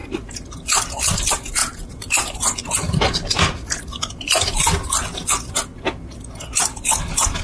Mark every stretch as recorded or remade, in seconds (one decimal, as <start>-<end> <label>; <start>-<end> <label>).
0.0-1.2 remade; 1.2-1.6 recorded; 1.6-5.5 remade; 5.5-7.4 recorded